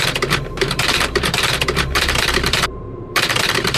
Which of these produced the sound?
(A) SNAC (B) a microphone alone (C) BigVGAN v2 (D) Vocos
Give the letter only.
C